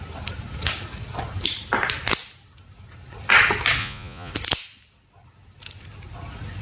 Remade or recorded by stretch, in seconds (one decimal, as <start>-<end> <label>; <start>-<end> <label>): 0.0-3.8 recorded; 3.8-4.3 remade; 4.3-6.6 recorded